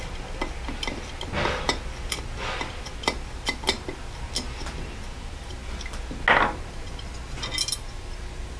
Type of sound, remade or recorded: recorded